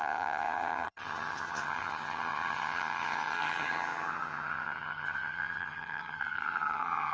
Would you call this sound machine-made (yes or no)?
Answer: yes